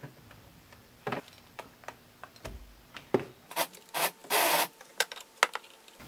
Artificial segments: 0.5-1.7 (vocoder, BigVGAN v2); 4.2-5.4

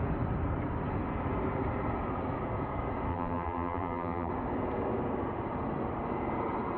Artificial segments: 3.1-4.3 (vocoder, BigVGAN v2)